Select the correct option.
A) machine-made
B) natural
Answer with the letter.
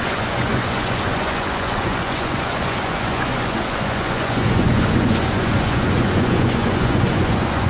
A